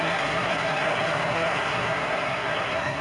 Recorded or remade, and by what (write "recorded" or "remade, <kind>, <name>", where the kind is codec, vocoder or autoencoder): remade, codec, SNAC